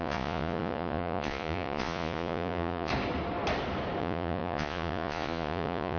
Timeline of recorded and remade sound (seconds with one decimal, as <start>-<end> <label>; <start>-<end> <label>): 0.0-2.9 remade; 2.9-4.0 recorded; 4.0-6.0 remade